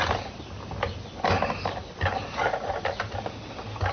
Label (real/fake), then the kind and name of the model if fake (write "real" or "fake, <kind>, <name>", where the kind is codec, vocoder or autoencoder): real